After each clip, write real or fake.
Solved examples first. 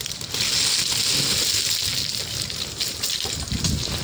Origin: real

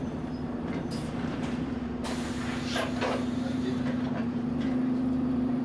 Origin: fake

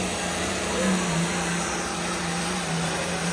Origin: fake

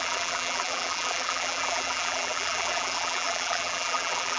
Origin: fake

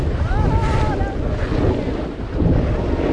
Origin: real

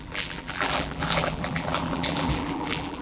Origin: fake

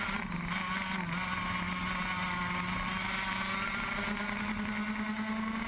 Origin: real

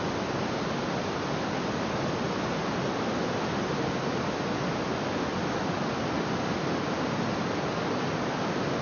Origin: real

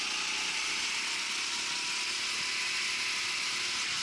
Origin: real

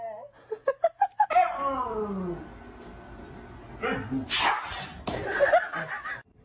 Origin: real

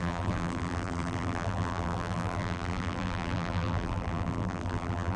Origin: fake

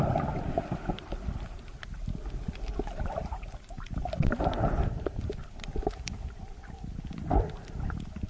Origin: real